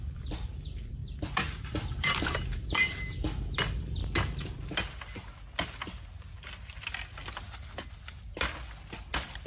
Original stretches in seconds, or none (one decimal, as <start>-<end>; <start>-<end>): 1.0-1.9; 4.0-9.5

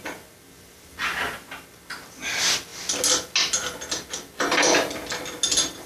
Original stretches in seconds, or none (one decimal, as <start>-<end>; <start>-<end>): 0.0-5.9

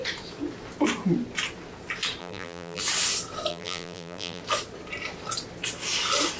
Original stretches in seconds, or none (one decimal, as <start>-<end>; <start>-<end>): 0.0-2.2; 2.8-3.5; 4.4-6.4

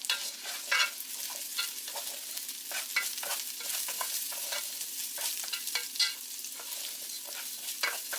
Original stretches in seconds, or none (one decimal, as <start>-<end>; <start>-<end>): 0.0-1.5; 2.1-3.3